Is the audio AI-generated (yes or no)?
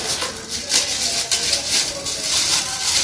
no